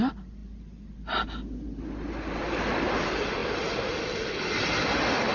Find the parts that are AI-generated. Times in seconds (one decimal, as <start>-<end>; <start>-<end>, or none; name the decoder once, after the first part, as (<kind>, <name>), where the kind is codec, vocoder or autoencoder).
none